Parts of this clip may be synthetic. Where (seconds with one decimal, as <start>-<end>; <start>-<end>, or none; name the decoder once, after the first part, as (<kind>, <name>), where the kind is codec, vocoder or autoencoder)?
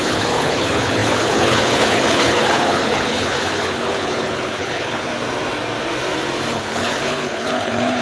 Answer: 0.0-5.1 (codec, HILCodec); 6.5-8.0